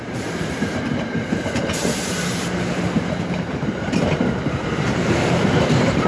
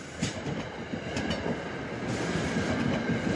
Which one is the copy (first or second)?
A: first